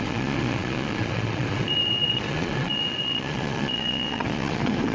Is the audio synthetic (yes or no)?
yes